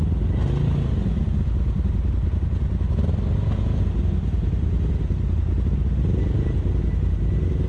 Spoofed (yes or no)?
no